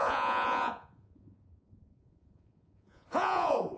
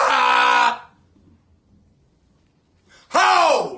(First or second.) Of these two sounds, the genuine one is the second